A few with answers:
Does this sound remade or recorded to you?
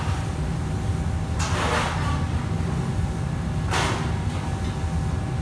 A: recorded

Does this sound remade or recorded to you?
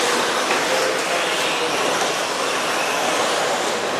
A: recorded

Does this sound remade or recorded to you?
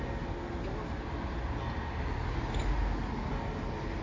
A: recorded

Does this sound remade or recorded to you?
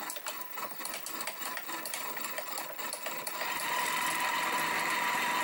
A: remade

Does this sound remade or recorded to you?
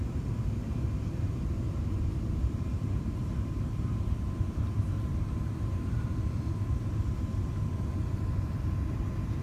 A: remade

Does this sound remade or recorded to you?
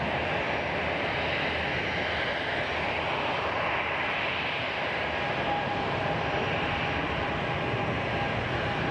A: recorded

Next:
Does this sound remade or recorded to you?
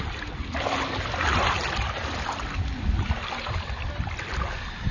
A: recorded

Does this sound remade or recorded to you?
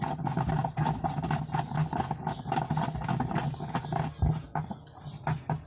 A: recorded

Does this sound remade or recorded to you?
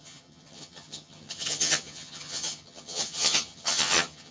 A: remade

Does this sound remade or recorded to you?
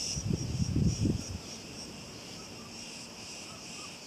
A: remade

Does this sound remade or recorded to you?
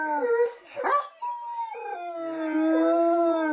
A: recorded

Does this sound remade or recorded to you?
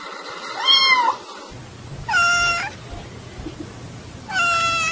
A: recorded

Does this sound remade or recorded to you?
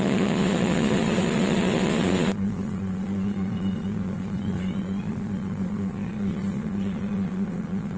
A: remade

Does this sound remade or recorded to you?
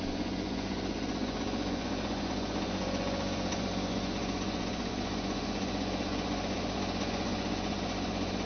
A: remade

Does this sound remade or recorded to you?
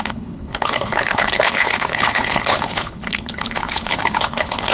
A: remade